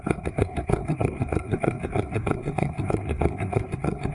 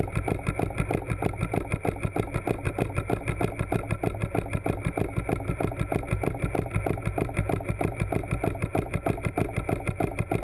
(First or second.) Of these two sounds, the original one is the second